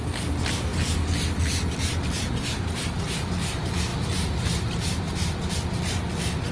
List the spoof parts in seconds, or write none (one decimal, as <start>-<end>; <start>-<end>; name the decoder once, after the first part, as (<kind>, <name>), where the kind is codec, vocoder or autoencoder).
3.9-5.5 (vocoder, BigVGAN v2)

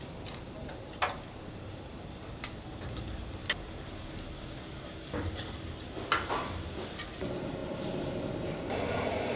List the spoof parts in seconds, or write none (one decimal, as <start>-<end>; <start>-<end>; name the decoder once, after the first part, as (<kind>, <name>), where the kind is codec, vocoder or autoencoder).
none

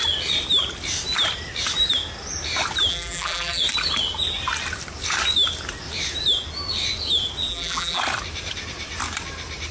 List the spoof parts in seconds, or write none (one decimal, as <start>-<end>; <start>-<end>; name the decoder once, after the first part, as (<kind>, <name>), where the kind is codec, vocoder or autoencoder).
2.9-3.6 (vocoder, BigVGAN v2); 7.5-8.0

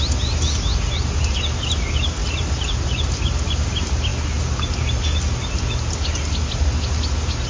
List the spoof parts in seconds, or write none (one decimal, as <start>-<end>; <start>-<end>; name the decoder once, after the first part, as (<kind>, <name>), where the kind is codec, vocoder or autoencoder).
2.2-3.3 (vocoder, BigVGAN v2)